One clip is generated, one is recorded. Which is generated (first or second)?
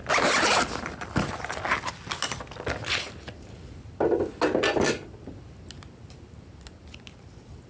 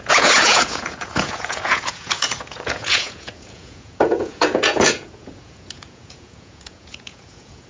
second